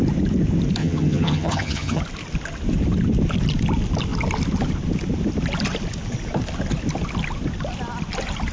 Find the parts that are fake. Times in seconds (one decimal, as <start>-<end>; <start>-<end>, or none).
0.8-2.0